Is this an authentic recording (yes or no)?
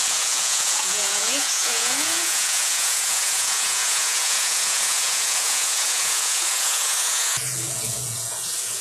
no